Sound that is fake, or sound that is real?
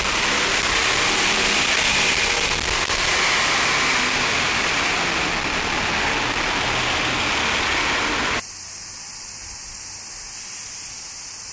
real